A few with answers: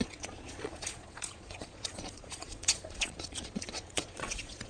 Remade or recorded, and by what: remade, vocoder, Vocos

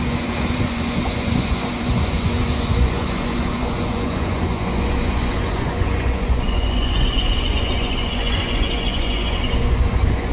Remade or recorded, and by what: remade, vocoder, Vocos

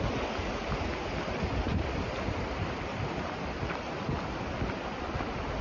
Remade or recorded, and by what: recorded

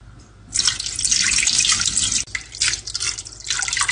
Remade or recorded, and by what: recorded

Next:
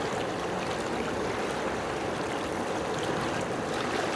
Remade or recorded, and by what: recorded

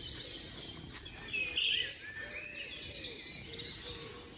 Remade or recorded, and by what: recorded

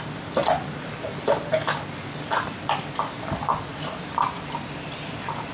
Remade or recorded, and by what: recorded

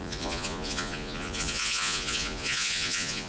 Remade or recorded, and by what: remade, vocoder, Vocos